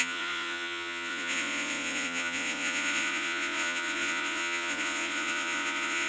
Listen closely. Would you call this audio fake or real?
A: fake